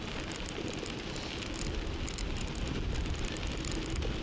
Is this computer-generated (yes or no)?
no